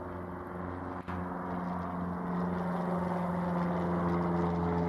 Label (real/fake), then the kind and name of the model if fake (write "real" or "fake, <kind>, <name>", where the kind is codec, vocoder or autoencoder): real